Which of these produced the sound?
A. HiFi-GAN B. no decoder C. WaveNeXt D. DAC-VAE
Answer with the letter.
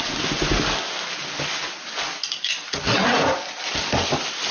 B